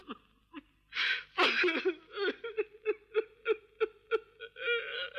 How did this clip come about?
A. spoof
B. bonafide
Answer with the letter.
B